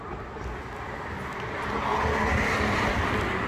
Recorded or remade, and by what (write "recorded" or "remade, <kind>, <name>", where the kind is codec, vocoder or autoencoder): recorded